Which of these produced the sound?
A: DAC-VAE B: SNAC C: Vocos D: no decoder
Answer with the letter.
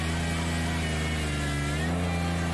D